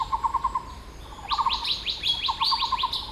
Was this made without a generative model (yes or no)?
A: yes